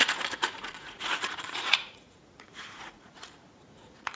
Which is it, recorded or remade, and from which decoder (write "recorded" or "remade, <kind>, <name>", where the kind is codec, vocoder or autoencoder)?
remade, vocoder, Vocos